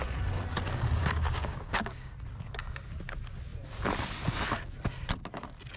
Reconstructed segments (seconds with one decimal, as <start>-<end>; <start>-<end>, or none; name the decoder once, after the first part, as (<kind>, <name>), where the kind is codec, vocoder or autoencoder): 1.0-2.1 (codec, DAC)